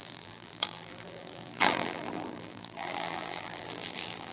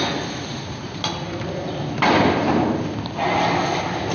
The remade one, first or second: first